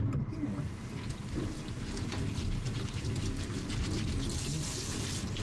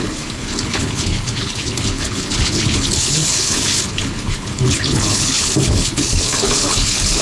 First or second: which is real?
first